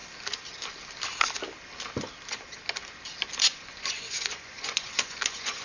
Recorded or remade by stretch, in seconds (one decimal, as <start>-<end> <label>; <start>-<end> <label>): 0.0-3.4 recorded; 3.4-5.6 remade